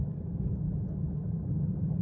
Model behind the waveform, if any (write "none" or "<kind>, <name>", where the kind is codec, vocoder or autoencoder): vocoder, BigVGAN v2